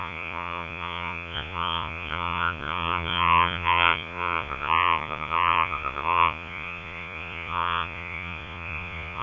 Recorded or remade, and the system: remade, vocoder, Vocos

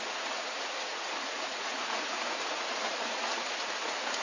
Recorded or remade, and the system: remade, vocoder, Vocos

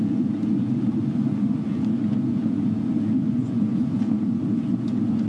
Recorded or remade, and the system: remade, vocoder, Vocos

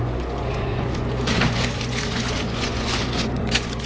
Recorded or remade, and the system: remade, vocoder, Vocos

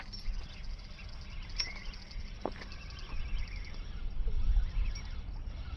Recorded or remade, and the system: recorded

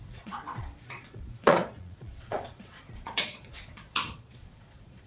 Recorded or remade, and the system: remade, vocoder, Vocos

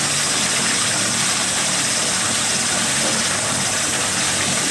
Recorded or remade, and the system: recorded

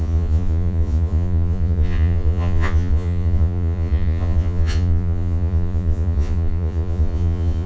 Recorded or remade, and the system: remade, vocoder, Vocos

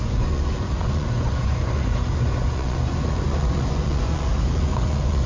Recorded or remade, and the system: remade, vocoder, Vocos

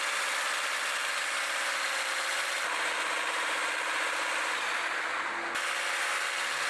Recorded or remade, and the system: recorded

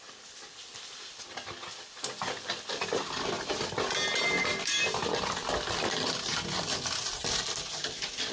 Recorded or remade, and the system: recorded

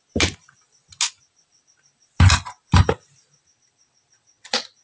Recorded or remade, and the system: recorded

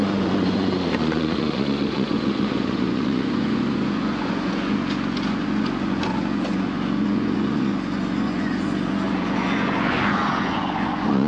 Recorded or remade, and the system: remade, vocoder, Vocos